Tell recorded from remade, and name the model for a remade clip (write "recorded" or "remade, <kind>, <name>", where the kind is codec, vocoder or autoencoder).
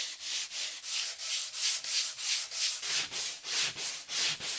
recorded